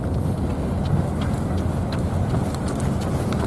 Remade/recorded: recorded